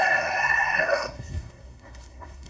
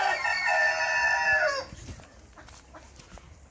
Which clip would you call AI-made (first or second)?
first